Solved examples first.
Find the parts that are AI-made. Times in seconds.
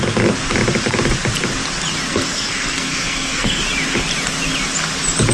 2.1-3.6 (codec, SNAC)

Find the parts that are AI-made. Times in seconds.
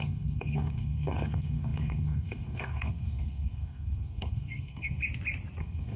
0.0-5.0 (codec, SNAC); 5.6-6.0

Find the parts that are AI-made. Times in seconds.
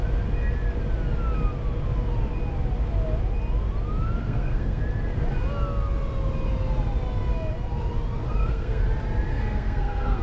4.2-4.8 (codec, SNAC); 8.2-8.8; 9.3-10.2